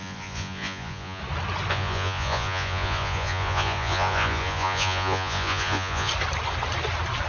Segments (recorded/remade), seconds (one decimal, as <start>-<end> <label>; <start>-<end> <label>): 0.0-1.2 remade; 1.2-1.7 recorded; 1.7-6.1 remade; 6.1-7.3 recorded